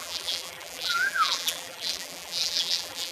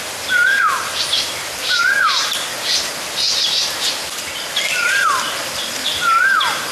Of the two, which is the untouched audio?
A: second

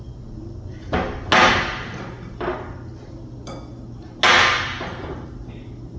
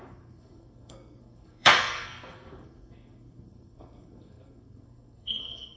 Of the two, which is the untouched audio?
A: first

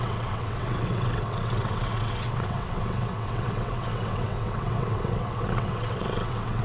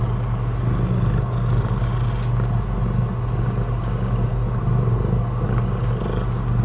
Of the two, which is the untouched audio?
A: second